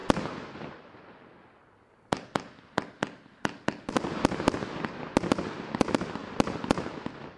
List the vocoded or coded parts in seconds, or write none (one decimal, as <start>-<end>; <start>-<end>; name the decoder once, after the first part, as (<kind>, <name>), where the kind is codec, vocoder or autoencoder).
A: none